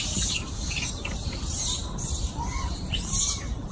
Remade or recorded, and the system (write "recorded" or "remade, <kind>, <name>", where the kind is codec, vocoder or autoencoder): remade, vocoder, BigVGAN v2